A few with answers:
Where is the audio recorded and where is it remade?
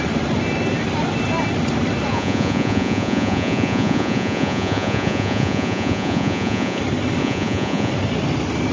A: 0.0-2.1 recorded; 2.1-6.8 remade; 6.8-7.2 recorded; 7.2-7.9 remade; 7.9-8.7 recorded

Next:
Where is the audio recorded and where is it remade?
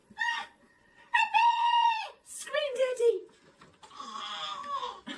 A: 0.0-3.1 remade; 3.1-5.2 recorded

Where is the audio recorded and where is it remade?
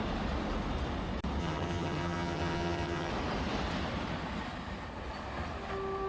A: 0.0-1.4 recorded; 1.4-3.1 remade; 3.1-6.1 recorded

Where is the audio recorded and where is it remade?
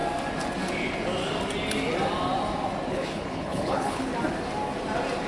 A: 0.0-2.9 recorded; 2.9-4.1 remade; 4.1-5.3 recorded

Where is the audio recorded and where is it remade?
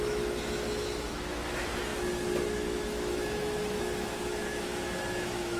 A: 0.0-5.6 remade